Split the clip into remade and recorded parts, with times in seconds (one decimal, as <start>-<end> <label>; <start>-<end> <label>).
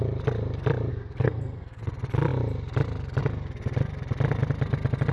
0.0-0.9 recorded; 0.9-1.8 remade; 1.8-5.1 recorded